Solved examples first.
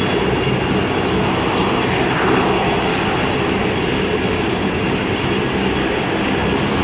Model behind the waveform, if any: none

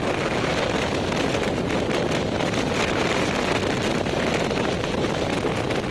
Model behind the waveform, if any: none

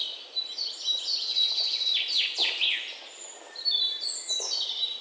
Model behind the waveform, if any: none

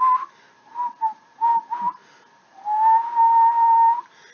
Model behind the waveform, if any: none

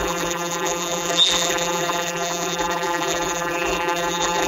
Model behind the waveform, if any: vocoder, BigVGAN v2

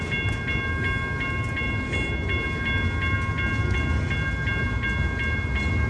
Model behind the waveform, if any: none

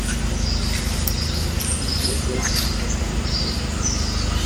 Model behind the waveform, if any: none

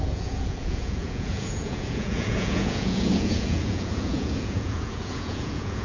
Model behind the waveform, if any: vocoder, Vocos